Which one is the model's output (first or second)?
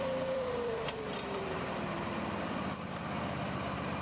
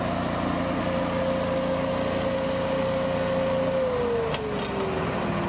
first